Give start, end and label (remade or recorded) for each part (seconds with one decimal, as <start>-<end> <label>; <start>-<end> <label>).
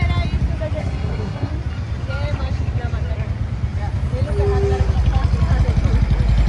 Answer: 0.0-0.8 recorded; 0.8-1.5 remade; 1.5-6.5 recorded